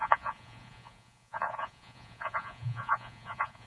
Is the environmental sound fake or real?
fake